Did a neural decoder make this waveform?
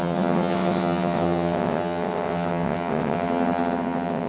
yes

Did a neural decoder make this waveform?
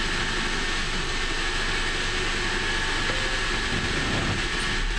no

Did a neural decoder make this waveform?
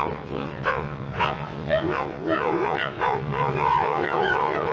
yes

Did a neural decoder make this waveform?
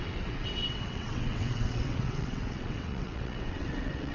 yes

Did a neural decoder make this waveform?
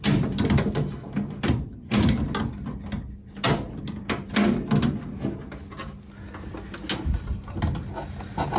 no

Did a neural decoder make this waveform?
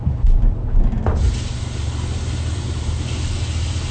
no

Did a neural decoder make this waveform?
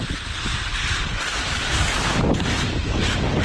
no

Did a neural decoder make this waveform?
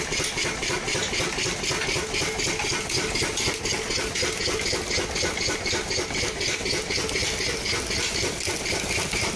no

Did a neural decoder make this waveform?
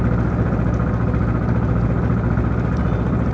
no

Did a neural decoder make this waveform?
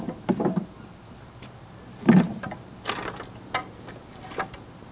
no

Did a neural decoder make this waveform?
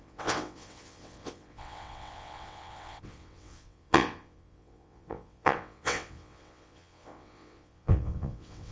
yes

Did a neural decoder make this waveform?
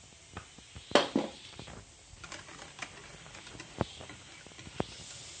no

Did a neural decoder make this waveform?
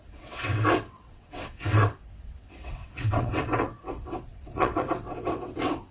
yes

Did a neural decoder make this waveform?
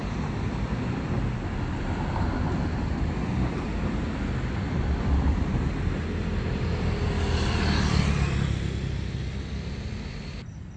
no